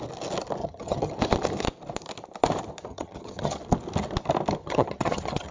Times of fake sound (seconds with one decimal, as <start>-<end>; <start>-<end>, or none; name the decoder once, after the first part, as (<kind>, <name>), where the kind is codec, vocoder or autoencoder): 0.6-1.1 (vocoder, HiFi-GAN); 2.9-3.6; 4.6-5.5